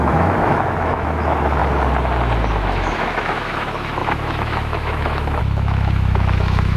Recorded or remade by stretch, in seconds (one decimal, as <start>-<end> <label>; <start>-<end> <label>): 0.0-1.6 remade; 1.6-2.5 recorded; 2.5-6.8 remade